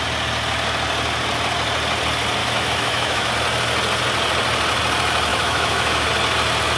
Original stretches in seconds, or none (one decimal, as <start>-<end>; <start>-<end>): 0.0-2.4; 3.3-5.3; 6.1-6.8